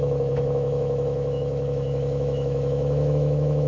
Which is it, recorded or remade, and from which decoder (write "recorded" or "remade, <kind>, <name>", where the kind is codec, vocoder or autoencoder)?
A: remade, autoencoder, DAC-VAE